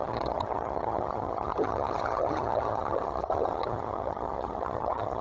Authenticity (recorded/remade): remade